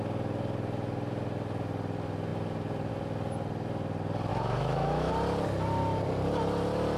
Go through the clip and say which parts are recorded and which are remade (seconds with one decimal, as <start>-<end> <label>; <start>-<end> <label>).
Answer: 0.0-4.3 recorded; 4.3-5.1 remade; 5.1-7.0 recorded

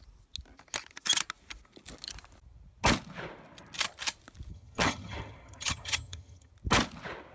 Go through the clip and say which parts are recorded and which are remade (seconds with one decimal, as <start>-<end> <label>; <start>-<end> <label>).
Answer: 0.0-4.5 recorded; 4.5-6.5 remade; 6.5-7.3 recorded

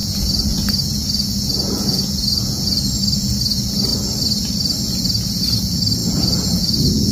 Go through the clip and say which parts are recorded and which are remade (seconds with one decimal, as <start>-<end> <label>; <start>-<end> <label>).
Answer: 0.0-2.9 remade; 2.9-6.0 recorded; 6.0-7.1 remade

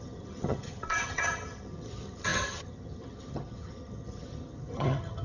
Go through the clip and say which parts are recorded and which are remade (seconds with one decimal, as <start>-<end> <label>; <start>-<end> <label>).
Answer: 0.0-5.2 remade

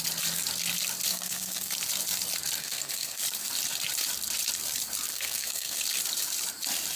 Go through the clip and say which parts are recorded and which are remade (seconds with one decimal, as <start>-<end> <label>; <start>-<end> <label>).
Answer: 0.0-1.1 recorded; 1.1-1.7 remade; 1.7-2.6 recorded; 2.6-3.2 remade; 3.2-5.1 recorded; 5.1-5.8 remade; 5.8-7.0 recorded